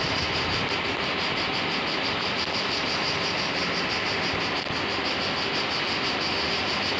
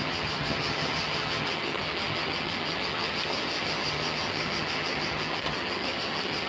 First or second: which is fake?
second